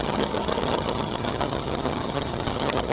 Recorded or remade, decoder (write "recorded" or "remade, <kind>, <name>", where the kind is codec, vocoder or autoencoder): remade, vocoder, HiFi-GAN